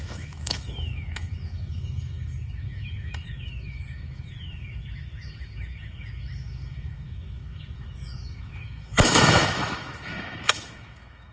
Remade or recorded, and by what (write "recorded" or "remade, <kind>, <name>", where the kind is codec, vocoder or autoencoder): remade, autoencoder, DAC-VAE